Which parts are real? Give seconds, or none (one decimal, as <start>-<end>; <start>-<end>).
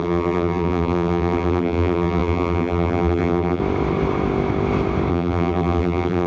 3.6-5.1